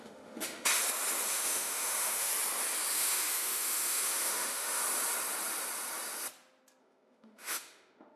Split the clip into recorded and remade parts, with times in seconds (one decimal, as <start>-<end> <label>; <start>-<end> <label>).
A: 0.0-0.7 remade; 0.7-1.3 recorded; 1.3-2.3 remade; 2.3-2.9 recorded; 2.9-4.8 remade; 4.8-6.8 recorded; 6.8-8.2 remade